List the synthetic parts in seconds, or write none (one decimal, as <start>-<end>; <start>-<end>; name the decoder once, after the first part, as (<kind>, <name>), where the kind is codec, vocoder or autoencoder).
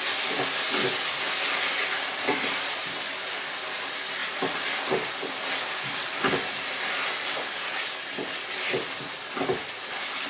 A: none